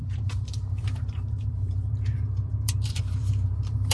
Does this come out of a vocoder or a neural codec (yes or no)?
yes